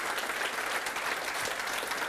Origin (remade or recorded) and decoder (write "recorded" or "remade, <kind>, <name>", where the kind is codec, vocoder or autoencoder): recorded